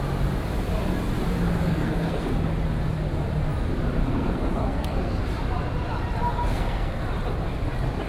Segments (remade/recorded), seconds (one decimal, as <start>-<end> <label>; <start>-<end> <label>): 0.0-1.6 recorded; 1.6-2.3 remade; 2.3-4.0 recorded; 4.0-5.2 remade; 5.2-6.5 recorded; 6.5-7.0 remade; 7.0-8.1 recorded